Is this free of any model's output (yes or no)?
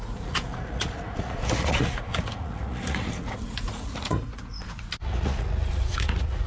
no